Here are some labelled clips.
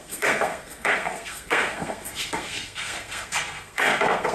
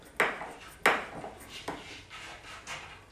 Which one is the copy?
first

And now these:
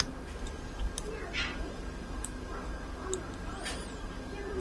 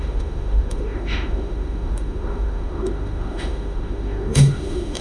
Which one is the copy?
second